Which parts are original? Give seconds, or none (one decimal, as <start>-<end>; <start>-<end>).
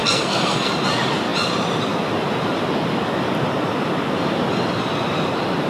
0.7-5.7